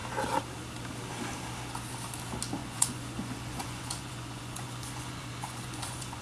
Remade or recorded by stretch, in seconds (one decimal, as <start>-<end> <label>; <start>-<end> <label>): 0.0-2.6 recorded; 2.6-6.2 remade